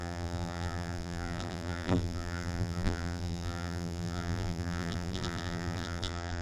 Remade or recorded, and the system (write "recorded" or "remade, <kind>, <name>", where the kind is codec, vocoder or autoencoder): remade, vocoder, BigVGAN v2